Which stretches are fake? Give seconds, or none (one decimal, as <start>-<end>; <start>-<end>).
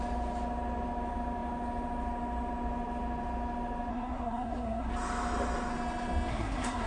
3.9-4.9; 6.3-6.9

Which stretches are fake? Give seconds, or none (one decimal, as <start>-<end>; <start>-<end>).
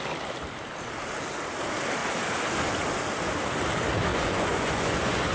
4.1-5.3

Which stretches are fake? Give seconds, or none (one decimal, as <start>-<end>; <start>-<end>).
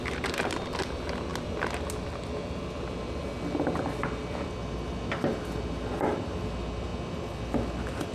none